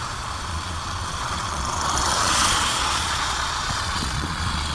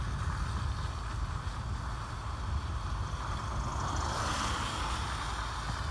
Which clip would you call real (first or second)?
second